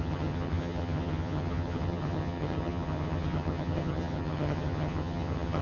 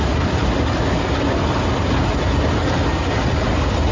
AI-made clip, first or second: first